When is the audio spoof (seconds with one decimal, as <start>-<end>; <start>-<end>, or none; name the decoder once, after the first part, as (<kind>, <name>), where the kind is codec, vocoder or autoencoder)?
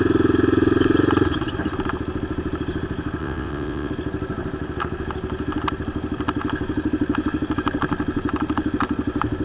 3.2-3.9 (vocoder, WaveNeXt)